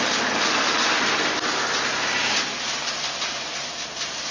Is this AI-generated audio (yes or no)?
no